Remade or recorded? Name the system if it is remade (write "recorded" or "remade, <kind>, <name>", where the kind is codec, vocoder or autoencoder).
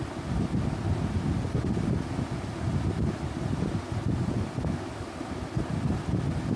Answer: recorded